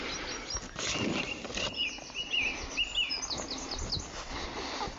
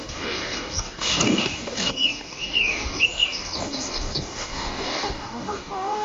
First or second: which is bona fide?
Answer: first